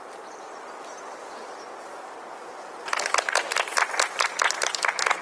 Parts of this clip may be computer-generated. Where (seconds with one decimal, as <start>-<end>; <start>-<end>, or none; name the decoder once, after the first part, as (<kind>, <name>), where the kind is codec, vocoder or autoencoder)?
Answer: none